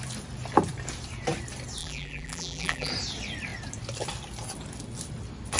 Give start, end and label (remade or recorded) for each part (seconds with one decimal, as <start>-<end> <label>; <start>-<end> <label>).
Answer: 0.0-1.8 recorded; 1.8-2.9 remade; 2.9-5.6 recorded